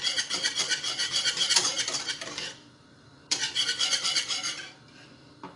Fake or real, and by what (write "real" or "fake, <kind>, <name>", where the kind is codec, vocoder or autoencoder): fake, vocoder, BigVGAN v2